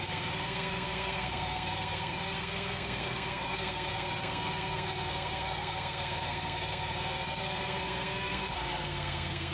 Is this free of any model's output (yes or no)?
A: no